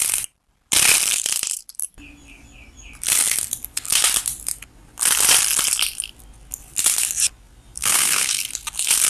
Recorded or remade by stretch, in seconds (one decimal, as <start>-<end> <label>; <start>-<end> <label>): 0.0-7.8 recorded; 7.8-8.4 remade; 8.4-9.1 recorded